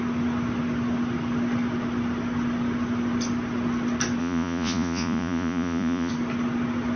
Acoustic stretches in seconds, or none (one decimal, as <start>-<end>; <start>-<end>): 0.0-4.2; 6.1-7.0